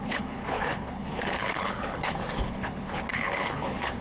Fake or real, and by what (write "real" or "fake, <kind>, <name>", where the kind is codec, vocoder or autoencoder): fake, codec, HILCodec